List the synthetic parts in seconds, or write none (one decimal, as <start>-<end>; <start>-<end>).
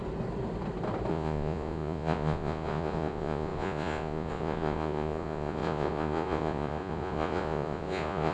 1.1-8.3